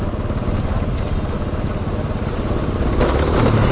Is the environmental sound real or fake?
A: real